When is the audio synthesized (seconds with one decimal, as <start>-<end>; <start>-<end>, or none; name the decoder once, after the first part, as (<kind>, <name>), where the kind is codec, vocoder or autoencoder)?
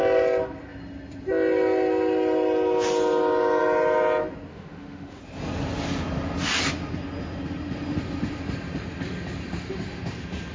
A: 4.5-5.2 (autoencoder, DAC-VAE)